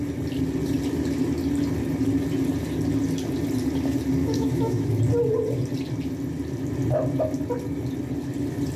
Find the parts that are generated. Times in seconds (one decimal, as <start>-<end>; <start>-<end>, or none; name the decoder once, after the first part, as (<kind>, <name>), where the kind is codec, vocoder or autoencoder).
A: 4.2-5.0 (autoencoder, DAC-VAE)

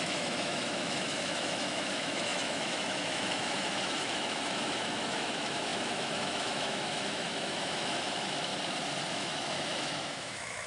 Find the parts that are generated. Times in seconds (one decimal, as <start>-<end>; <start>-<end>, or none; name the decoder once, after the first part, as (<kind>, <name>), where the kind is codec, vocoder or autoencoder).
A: 0.0-8.5 (autoencoder, DAC-VAE); 9.1-10.7

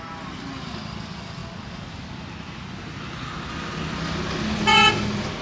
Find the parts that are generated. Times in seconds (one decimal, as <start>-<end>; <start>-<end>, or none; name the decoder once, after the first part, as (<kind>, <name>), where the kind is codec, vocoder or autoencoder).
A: none